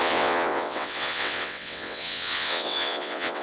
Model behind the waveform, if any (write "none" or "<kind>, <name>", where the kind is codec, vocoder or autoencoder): vocoder, WaveNeXt